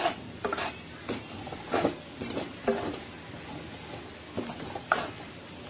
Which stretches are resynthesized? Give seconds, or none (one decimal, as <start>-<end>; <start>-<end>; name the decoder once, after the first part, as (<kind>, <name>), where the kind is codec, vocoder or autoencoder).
none